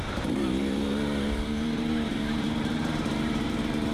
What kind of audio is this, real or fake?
fake